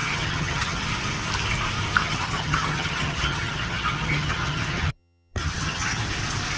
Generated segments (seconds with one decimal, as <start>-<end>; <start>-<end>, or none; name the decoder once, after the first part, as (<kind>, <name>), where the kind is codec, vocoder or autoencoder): 0.0-0.8 (vocoder, HiFi-GAN); 2.0-6.0